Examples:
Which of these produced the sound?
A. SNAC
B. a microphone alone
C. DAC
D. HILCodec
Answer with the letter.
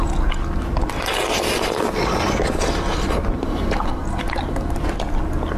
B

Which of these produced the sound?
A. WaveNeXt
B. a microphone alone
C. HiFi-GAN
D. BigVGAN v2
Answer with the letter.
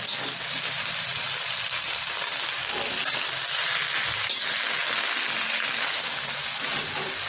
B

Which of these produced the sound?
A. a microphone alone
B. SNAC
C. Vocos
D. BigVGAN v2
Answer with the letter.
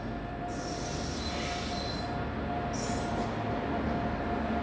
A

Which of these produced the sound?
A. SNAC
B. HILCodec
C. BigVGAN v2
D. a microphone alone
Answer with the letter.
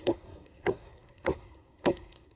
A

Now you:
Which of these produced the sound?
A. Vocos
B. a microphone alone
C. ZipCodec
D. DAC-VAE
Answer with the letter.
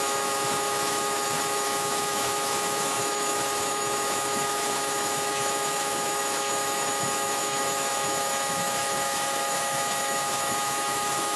D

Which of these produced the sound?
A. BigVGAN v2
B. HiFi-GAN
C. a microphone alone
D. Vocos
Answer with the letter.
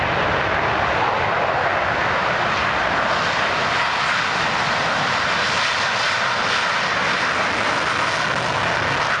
C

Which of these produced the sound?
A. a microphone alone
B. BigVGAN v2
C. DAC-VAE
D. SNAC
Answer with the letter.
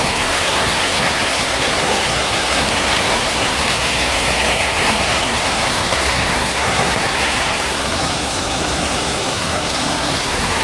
D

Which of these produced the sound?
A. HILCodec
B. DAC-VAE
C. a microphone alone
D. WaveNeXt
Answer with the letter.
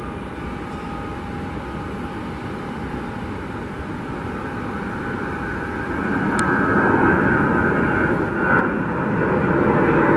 C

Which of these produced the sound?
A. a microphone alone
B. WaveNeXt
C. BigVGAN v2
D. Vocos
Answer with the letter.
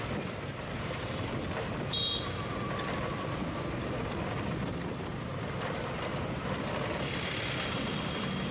A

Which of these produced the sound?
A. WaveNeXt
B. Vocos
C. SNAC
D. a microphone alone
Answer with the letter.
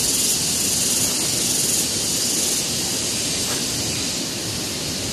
D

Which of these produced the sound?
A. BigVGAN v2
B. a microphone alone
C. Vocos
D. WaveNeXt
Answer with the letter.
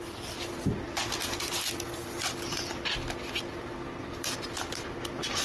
B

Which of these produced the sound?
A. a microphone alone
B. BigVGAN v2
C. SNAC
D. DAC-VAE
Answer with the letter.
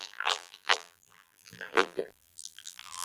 B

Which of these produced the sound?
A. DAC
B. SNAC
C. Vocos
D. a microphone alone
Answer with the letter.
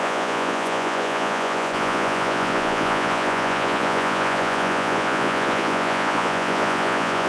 C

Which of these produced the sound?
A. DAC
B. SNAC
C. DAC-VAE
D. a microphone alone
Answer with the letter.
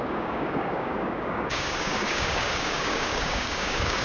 A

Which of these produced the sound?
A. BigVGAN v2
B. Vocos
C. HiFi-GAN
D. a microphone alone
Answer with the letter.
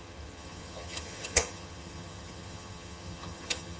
C